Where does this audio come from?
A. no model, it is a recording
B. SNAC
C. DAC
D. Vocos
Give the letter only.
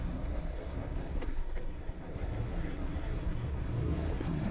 B